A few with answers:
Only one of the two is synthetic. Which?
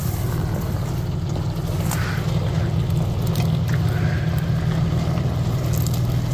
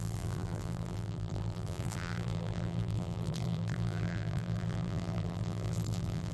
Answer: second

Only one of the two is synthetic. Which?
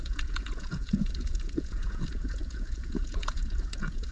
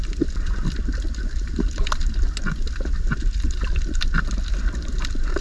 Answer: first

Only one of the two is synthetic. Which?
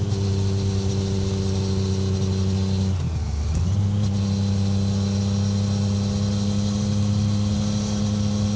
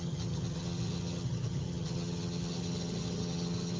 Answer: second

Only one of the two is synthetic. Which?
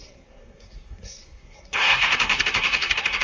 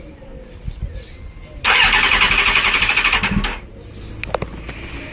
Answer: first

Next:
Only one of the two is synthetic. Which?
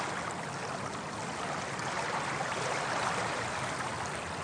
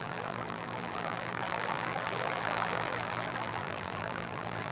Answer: second